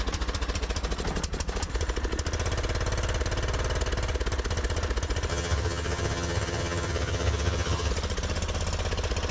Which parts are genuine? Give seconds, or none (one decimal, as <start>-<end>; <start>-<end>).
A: 0.0-5.3; 7.9-9.3